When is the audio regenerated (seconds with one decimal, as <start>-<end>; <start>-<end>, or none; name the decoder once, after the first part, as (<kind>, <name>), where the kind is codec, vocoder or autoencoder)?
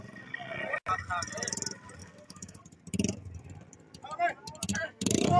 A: 2.0-2.6 (codec, SNAC); 4.7-5.4